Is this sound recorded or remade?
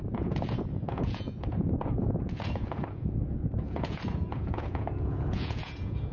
remade